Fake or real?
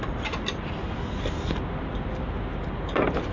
real